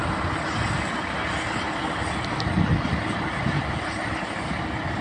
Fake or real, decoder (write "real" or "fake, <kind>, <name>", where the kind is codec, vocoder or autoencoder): real